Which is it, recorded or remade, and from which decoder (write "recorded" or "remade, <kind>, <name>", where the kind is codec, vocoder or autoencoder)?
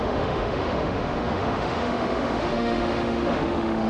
remade, autoencoder, DAC-VAE